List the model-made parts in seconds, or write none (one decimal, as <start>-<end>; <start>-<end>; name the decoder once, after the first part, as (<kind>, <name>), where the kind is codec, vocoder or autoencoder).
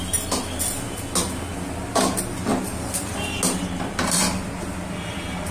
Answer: none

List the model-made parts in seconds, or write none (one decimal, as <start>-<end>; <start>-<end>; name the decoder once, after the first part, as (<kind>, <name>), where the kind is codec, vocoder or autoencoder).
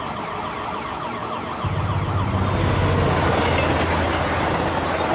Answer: none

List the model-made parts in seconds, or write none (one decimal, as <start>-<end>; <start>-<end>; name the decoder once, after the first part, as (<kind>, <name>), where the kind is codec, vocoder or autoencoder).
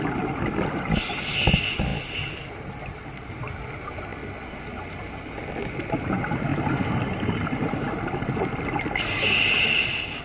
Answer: none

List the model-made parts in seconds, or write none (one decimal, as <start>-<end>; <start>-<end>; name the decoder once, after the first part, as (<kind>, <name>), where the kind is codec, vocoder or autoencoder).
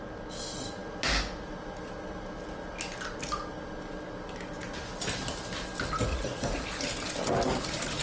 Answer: 6.1-6.6 (vocoder, Vocos)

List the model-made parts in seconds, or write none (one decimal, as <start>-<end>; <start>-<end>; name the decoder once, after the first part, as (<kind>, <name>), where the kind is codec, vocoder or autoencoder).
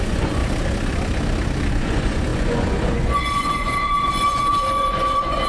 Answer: 0.0-0.4 (vocoder, Vocos); 1.7-5.5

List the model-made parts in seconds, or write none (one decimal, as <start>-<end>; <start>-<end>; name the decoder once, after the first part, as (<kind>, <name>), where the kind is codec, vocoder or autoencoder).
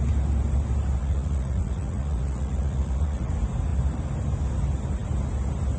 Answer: 1.0-3.3 (vocoder, Vocos)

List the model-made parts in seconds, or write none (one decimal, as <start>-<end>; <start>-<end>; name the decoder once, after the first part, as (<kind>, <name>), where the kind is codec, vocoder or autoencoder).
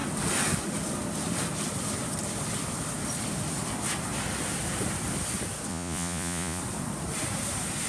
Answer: 5.7-6.6 (vocoder, Vocos)